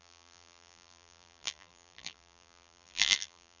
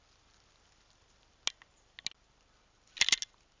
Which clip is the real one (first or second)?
second